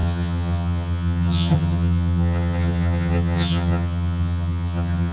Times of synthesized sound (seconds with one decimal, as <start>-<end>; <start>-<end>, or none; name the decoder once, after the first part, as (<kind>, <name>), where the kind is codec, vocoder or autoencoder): 0.0-5.1 (vocoder, HiFi-GAN)